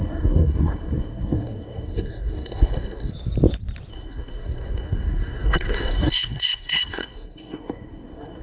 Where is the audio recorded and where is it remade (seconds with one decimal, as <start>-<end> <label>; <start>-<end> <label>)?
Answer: 0.0-3.1 remade; 3.1-3.9 recorded; 3.9-8.4 remade